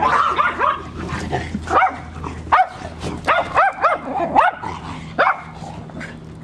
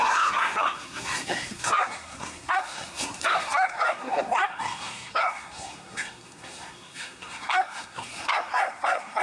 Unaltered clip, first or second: first